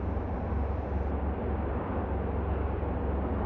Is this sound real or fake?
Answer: real